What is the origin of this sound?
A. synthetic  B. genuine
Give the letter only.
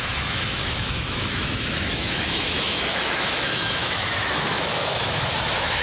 A